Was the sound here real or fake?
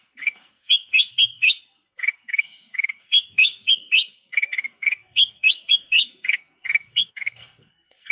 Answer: fake